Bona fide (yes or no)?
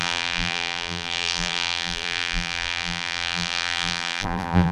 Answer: no